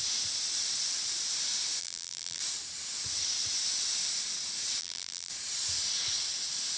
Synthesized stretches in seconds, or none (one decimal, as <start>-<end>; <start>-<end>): 1.8-2.4; 4.8-5.3